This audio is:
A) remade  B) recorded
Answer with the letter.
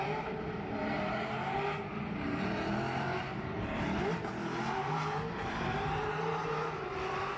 A